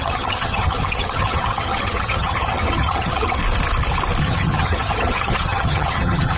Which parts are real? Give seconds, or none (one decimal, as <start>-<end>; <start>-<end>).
3.4-4.2